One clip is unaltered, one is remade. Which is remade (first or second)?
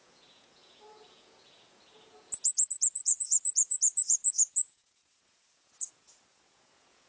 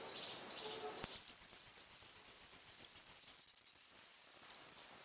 first